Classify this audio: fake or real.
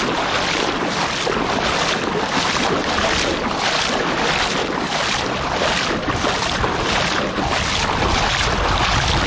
real